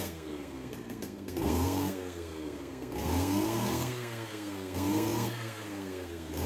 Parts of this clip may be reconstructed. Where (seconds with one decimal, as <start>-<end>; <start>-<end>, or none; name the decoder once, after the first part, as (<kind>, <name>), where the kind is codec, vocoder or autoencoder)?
0.0-6.5 (codec, SNAC)